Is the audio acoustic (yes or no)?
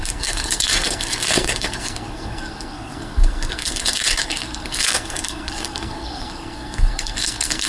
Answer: no